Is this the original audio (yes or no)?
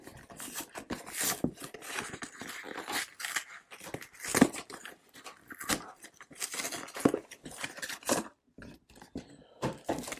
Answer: yes